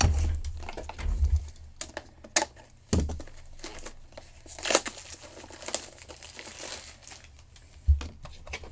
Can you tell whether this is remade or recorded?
recorded